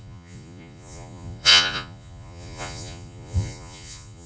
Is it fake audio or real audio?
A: fake